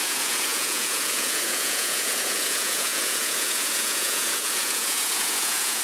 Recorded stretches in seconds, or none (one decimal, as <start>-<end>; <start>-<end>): none